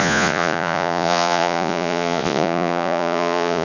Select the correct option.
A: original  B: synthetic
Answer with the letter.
B